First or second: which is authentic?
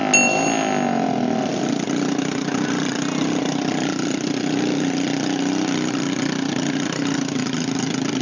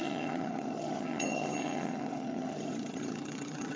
first